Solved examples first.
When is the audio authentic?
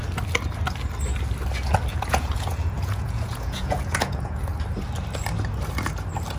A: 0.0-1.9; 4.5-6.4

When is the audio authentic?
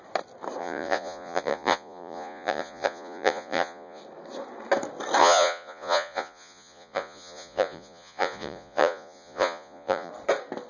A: 0.0-0.6; 4.0-5.2; 10.1-10.7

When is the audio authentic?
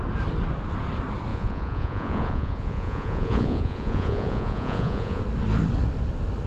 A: 0.0-1.3; 5.2-6.5